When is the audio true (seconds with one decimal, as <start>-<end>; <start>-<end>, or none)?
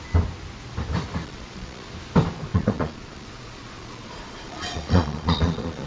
0.0-1.2; 1.9-2.5